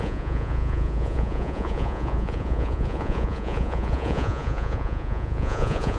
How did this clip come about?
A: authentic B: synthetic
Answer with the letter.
B